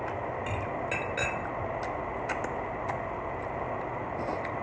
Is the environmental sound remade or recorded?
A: recorded